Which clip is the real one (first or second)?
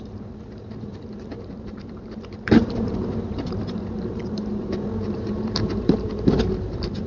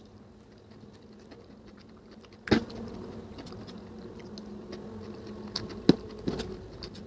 second